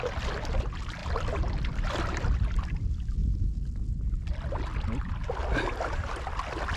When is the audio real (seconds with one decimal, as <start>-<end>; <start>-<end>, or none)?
0.0-6.8